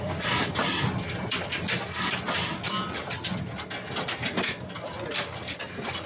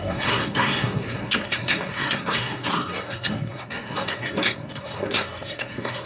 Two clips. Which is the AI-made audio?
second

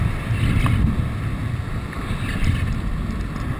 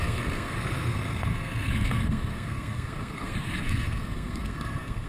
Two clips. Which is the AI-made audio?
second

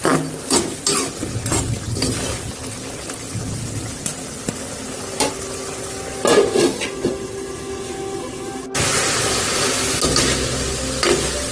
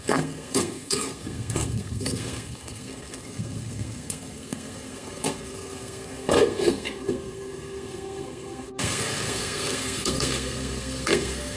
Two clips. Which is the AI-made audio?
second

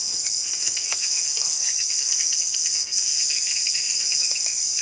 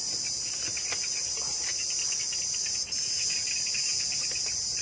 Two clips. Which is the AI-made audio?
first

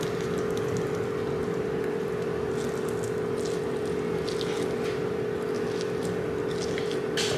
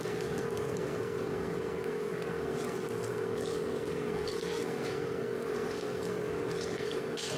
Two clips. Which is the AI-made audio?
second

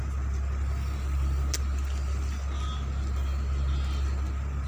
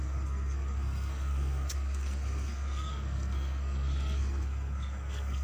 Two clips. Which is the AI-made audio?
second